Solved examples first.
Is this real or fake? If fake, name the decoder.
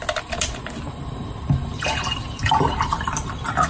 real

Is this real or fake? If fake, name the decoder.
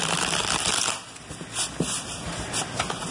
real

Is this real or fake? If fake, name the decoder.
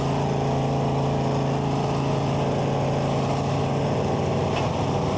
real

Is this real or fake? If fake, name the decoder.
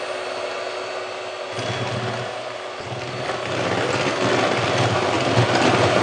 real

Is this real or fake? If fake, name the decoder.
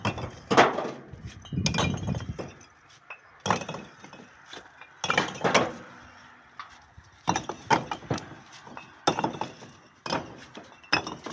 real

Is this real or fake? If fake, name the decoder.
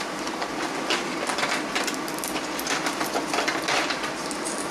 real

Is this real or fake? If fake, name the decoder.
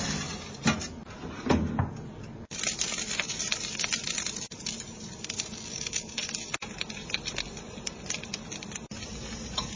real